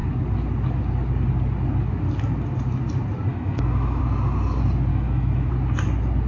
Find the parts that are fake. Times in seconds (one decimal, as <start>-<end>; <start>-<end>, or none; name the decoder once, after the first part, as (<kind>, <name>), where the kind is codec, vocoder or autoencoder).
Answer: 3.3-4.0 (autoencoder, DAC-VAE); 4.9-5.5